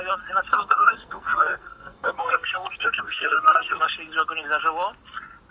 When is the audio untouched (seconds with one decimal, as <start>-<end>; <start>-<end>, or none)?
0.0-0.5; 3.8-5.5